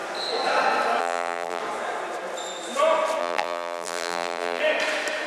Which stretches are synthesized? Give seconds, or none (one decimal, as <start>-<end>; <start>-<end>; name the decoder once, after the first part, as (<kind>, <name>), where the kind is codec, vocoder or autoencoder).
1.0-1.6 (vocoder, BigVGAN v2); 3.2-4.6